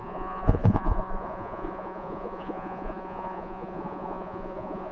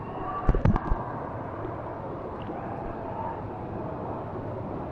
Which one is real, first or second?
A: second